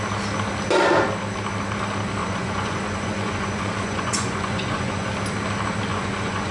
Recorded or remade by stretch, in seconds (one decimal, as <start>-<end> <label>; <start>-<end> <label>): 0.0-2.2 recorded; 2.2-5.1 remade; 5.1-5.9 recorded; 5.9-6.5 remade